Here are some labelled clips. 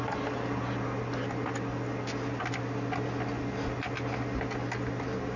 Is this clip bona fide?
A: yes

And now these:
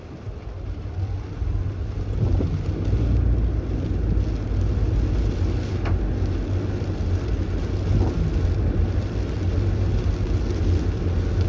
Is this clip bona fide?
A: yes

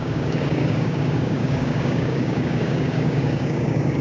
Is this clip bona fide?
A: no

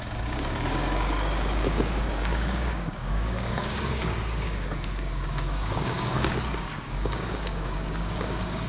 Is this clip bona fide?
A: no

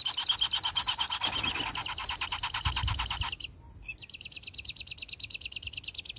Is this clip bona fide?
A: yes